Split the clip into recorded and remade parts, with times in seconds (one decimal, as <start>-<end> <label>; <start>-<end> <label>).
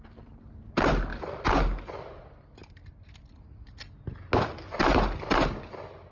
0.0-6.1 recorded